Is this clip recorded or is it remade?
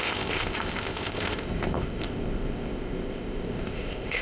remade